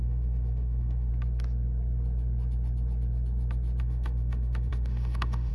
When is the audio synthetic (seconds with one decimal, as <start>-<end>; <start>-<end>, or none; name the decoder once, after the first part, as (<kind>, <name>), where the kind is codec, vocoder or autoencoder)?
0.0-1.1 (autoencoder, DAC-VAE); 3.8-5.5